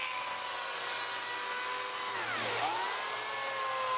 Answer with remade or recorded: recorded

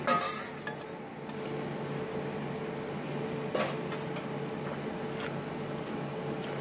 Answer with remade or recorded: recorded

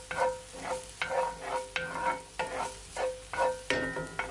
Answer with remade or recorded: recorded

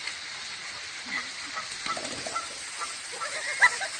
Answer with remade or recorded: recorded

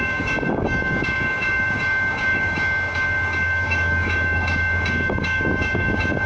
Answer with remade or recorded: remade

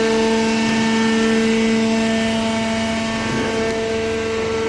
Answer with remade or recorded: recorded